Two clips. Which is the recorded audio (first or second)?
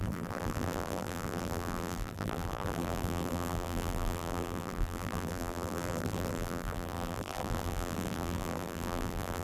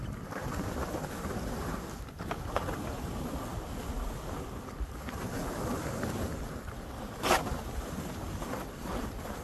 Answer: second